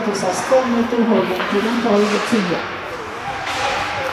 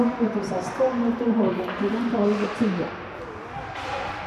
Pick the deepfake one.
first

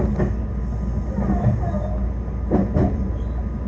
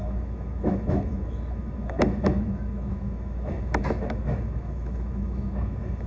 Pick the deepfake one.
second